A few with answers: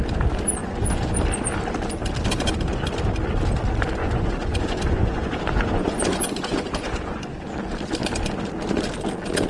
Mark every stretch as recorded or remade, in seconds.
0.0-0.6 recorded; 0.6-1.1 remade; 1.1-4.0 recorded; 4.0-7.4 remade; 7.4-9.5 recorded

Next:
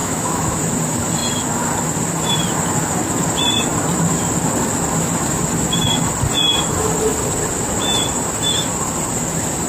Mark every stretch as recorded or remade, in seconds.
0.0-0.6 remade; 0.6-9.7 recorded

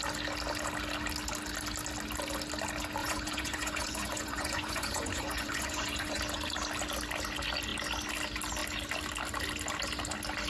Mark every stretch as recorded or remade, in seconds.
0.0-3.0 recorded; 3.0-6.2 remade; 6.2-10.5 recorded

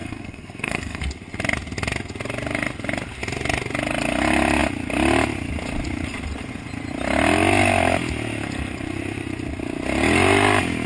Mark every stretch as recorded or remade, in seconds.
0.0-1.0 remade; 1.0-10.9 recorded

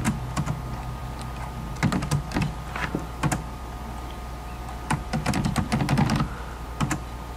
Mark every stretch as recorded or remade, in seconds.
0.0-7.4 recorded